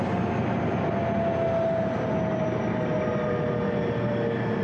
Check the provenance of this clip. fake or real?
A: real